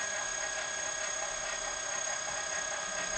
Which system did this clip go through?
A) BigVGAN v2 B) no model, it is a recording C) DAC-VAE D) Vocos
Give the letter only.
B